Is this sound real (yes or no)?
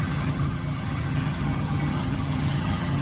no